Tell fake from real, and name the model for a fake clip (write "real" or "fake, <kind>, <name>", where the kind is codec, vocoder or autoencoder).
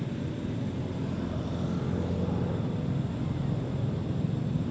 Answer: real